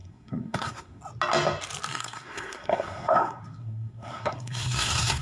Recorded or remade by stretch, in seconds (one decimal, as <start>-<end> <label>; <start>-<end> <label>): 0.0-1.0 remade; 1.0-1.9 recorded; 1.9-5.2 remade